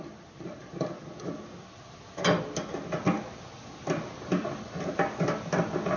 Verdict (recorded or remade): recorded